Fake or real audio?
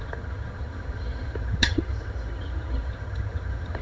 fake